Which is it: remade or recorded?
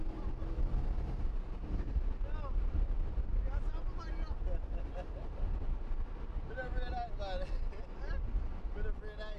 recorded